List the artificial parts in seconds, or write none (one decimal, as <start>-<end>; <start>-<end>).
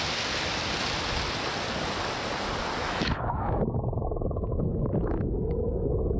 2.8-5.6